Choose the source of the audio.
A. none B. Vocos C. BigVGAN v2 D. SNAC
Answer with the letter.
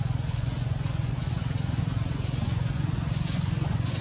B